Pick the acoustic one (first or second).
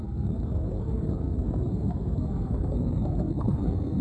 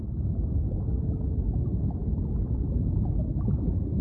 second